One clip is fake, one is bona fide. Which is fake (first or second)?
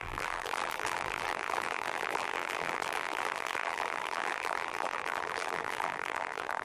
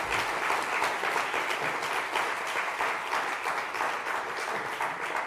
first